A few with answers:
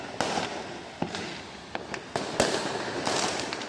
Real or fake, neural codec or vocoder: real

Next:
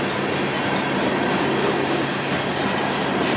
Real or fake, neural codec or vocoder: real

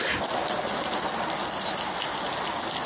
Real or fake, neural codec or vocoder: real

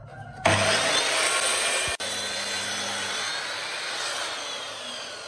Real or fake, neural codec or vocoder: real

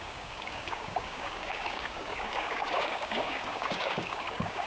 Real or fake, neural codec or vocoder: fake, codec, DAC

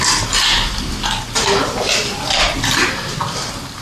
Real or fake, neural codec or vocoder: real